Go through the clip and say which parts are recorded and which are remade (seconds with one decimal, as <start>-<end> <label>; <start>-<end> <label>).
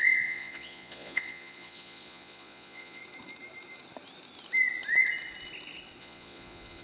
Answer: 0.0-3.0 remade; 3.0-6.0 recorded; 6.0-6.8 remade